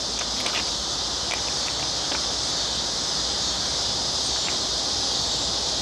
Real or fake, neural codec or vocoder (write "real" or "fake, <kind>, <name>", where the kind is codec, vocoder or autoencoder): fake, vocoder, BigVGAN v2